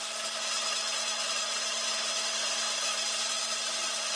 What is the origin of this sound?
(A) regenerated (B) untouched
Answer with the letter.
B